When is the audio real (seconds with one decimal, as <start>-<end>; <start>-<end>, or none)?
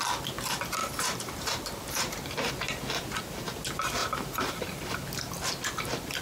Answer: 0.0-0.8; 2.5-4.0; 4.7-6.2